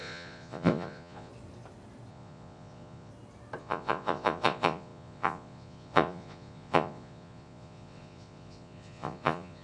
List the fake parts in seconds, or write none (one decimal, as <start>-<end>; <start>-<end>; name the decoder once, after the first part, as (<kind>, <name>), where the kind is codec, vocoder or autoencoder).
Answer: 0.0-1.3 (vocoder, Vocos); 2.1-3.1; 3.6-9.6